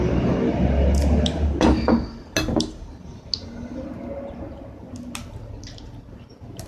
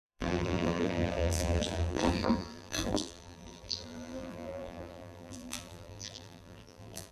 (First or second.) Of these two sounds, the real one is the first